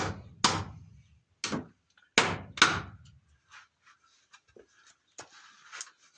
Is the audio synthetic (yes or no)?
no